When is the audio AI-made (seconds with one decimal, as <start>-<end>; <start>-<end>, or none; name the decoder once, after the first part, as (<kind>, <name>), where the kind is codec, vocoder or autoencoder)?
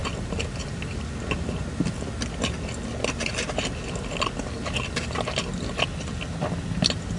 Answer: none